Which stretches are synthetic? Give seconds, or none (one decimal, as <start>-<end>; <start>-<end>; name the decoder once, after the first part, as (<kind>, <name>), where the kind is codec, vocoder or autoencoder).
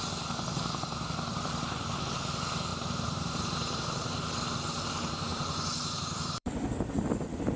2.7-4.3 (vocoder, BigVGAN v2); 5.3-6.7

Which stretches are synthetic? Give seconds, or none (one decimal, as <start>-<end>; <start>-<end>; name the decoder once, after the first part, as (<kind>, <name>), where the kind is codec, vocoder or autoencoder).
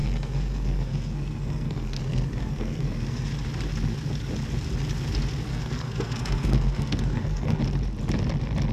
0.0-3.3 (codec, SNAC); 5.5-7.6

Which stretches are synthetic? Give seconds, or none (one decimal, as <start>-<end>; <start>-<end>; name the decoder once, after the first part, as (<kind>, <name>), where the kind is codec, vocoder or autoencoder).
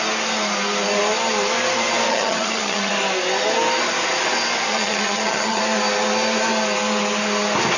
2.1-2.9 (vocoder, HiFi-GAN); 4.7-5.6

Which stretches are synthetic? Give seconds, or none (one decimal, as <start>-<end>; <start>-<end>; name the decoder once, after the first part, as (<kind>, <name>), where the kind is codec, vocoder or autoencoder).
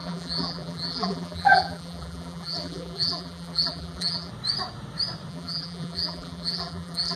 0.0-4.3 (vocoder, BigVGAN v2); 5.3-7.2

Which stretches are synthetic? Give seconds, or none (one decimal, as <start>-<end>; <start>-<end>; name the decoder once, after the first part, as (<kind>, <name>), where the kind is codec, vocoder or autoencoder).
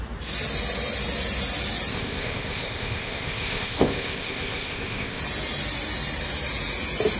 1.9-5.2 (codec, ZipCodec)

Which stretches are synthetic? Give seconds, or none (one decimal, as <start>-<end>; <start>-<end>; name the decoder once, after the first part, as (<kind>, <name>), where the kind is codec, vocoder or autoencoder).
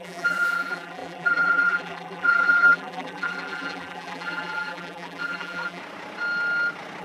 0.0-5.8 (vocoder, BigVGAN v2)